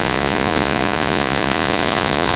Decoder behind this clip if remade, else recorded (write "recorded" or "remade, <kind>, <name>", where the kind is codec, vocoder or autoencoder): remade, vocoder, Vocos